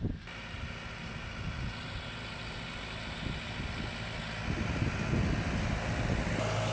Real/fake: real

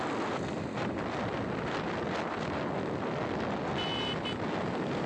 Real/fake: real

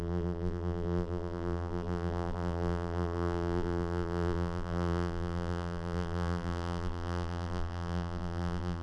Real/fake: fake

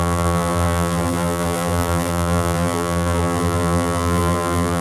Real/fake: fake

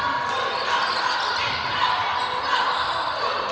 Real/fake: real